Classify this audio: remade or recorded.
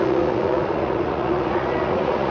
remade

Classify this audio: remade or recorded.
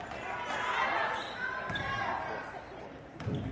recorded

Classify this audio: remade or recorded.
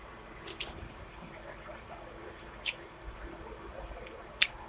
remade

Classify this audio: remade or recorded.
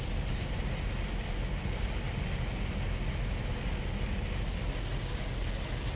recorded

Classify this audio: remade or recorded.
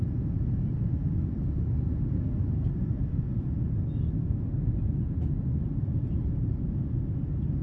recorded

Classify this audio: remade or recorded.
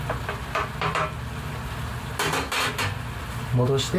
recorded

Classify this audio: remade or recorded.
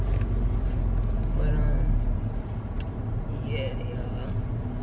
recorded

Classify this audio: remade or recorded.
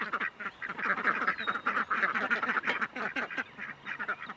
recorded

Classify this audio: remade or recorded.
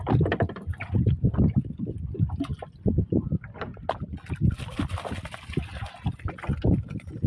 recorded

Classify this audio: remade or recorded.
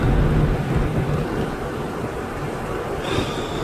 recorded